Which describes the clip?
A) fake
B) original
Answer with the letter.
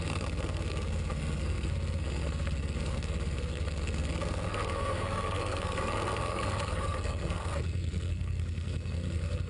A